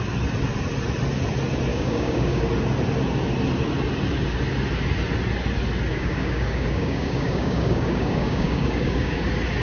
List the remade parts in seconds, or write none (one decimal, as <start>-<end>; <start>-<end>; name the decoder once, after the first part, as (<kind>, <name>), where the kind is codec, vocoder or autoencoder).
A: 1.7-2.4 (codec, DAC); 5.9-9.2